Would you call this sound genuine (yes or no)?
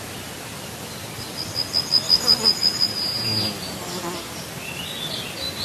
yes